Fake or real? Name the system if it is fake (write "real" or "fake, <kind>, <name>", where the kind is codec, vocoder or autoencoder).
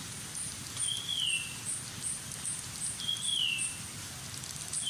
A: real